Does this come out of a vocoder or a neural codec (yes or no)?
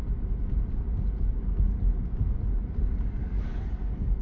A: no